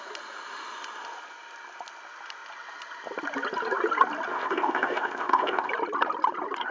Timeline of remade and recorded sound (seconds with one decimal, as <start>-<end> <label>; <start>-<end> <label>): 0.0-4.3 recorded; 4.3-5.7 remade; 5.7-6.7 recorded